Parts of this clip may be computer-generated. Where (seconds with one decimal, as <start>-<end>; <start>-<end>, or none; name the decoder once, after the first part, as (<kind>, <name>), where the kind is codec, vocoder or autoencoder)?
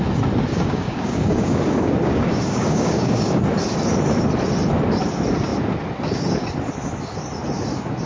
0.5-3.4 (codec, DAC)